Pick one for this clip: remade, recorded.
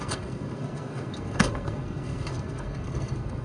remade